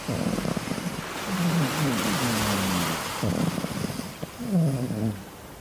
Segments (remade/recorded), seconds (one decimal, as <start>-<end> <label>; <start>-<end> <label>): 0.0-5.6 recorded